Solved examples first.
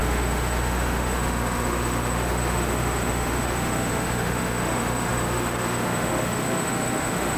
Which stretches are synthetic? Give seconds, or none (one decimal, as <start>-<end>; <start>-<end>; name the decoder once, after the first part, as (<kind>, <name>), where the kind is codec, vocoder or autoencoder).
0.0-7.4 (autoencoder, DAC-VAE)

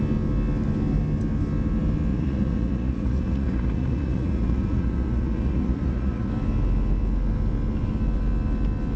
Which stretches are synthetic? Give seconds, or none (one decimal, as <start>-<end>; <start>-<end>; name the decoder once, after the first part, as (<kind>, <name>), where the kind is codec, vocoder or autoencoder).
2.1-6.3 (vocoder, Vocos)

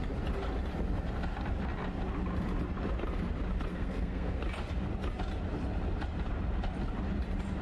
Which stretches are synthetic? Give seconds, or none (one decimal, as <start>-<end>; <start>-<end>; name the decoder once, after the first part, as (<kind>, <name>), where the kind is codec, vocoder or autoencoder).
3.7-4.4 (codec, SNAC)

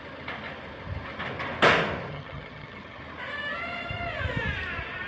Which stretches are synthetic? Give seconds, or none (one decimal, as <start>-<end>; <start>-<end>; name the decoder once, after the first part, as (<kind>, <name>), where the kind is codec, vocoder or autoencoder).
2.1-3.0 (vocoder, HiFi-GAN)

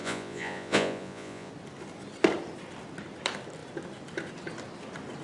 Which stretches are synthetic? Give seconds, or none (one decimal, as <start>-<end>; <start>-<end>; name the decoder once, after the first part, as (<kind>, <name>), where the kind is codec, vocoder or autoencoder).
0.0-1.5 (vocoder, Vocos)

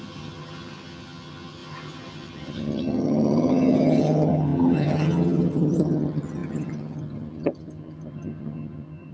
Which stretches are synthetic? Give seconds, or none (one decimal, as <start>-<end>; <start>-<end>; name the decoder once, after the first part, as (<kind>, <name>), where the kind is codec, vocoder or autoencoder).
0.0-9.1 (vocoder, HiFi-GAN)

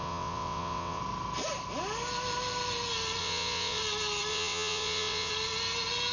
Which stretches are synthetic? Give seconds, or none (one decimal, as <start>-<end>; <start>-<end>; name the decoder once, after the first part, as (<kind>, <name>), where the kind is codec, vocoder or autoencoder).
0.0-1.0 (vocoder, WaveNeXt); 3.2-3.8; 4.3-5.3